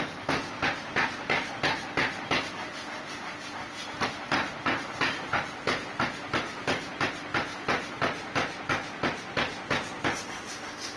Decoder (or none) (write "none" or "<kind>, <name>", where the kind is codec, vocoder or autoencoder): none